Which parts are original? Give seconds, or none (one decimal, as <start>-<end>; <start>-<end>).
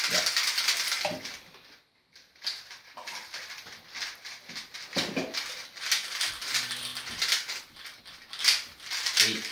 0.0-9.5